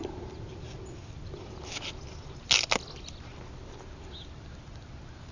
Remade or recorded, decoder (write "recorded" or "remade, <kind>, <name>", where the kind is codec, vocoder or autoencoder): recorded